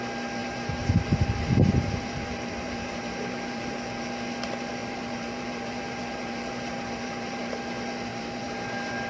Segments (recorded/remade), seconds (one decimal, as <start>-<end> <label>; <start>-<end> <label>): 0.0-0.4 recorded; 0.4-4.1 remade; 4.1-4.8 recorded; 4.8-7.5 remade; 7.5-8.1 recorded; 8.1-9.1 remade